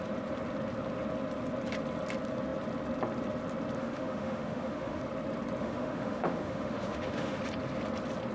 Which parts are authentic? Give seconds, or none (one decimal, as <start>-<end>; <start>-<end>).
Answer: 0.0-3.8; 5.0-5.6; 7.4-8.3